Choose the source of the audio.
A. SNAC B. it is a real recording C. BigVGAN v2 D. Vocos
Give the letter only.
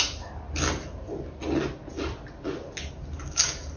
B